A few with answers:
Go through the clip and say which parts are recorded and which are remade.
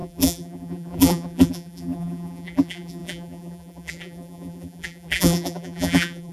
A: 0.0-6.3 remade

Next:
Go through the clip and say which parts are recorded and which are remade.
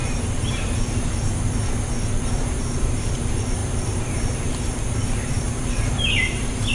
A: 0.0-6.7 remade